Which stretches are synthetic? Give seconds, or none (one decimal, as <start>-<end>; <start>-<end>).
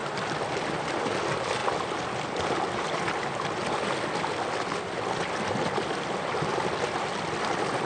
none